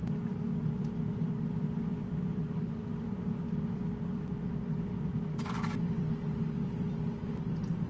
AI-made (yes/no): no